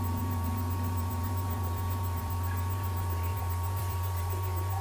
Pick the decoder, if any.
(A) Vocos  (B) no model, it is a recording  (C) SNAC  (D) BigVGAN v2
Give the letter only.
D